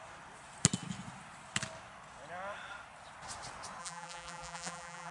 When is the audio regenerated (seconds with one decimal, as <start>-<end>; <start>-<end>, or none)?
3.8-5.1